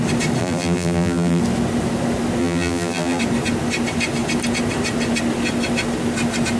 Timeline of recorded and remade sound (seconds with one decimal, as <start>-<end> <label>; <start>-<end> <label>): 0.0-0.4 recorded; 0.4-1.4 remade; 1.4-2.4 recorded; 2.4-3.2 remade; 3.2-6.6 recorded